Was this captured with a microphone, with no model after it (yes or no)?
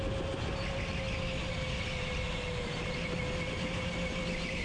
yes